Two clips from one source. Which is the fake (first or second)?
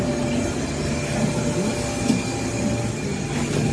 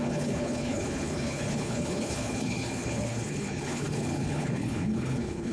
second